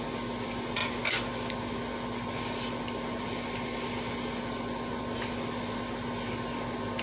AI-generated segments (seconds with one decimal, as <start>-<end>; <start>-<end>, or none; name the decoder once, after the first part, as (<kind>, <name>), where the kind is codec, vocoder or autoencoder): none